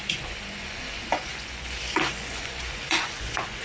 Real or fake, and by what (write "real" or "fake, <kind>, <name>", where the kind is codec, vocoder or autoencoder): fake, vocoder, Vocos